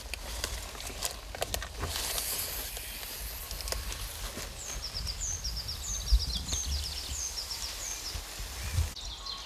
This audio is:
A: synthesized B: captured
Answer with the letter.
B